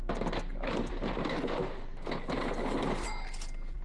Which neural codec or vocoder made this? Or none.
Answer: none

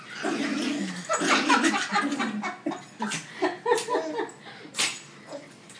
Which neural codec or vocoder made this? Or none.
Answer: none